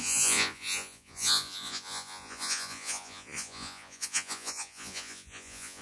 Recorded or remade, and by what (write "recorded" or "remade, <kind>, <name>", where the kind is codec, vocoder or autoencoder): remade, vocoder, Vocos